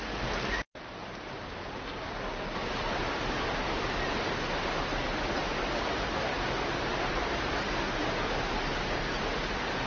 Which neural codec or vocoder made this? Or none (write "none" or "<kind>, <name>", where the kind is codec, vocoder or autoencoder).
none